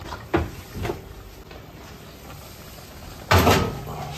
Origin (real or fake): real